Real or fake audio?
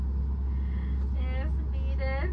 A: real